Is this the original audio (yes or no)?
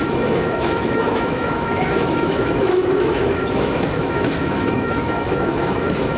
no